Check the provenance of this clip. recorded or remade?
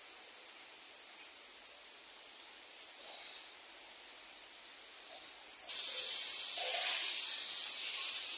recorded